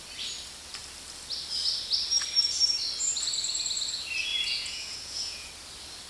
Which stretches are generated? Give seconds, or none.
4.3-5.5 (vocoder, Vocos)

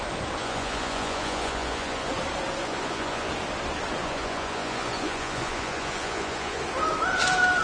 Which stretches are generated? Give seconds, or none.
0.4-2.1 (vocoder, Vocos); 2.6-3.3; 4.0-6.6

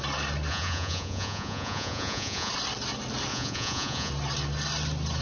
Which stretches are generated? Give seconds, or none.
0.5-2.5 (vocoder, Vocos); 3.3-4.1